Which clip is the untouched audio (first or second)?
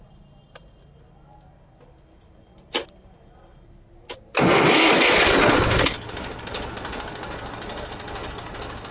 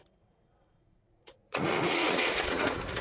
first